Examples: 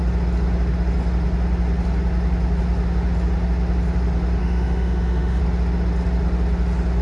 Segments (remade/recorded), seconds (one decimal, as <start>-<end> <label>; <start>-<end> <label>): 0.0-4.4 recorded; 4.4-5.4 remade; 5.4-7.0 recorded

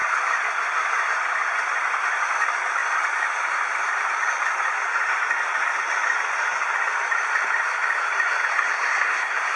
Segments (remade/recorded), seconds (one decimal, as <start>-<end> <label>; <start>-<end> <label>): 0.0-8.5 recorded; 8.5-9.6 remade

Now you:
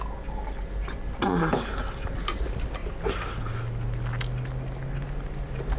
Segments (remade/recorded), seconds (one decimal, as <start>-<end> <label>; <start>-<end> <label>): 0.0-5.8 recorded